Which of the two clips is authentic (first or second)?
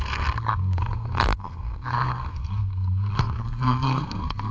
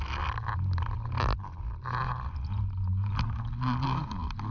second